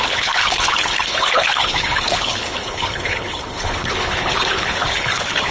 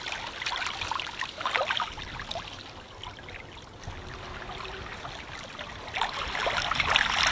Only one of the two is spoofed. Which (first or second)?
first